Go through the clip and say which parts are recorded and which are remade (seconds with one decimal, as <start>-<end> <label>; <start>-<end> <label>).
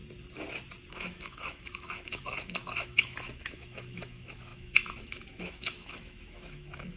0.0-0.9 recorded; 0.9-7.0 remade